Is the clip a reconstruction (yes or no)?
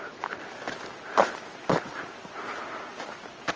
no